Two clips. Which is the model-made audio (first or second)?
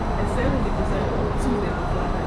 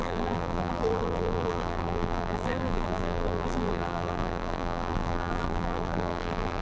second